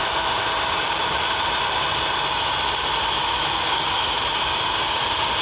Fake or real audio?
real